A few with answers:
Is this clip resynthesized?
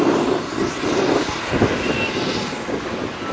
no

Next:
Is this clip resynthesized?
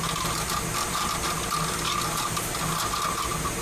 no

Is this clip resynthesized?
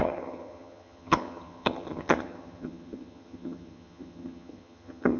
yes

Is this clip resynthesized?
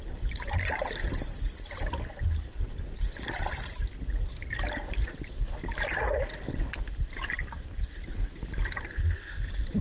no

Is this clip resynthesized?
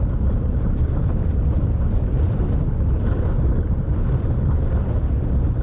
yes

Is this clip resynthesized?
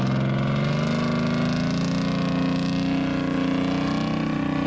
no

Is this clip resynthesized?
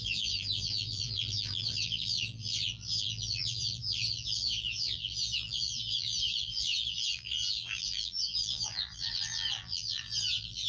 yes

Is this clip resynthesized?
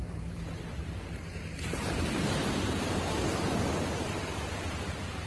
yes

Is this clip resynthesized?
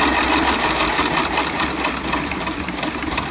yes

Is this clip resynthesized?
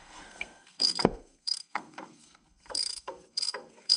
yes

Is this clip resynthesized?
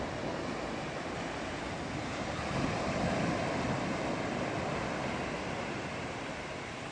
no